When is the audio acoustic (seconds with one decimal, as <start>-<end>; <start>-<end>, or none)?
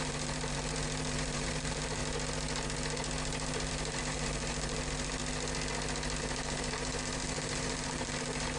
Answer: 2.0-3.7; 5.2-6.2